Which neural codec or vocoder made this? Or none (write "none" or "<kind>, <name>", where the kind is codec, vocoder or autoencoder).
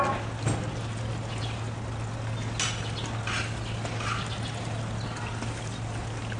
none